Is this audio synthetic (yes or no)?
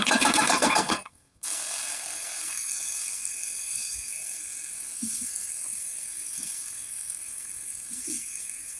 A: yes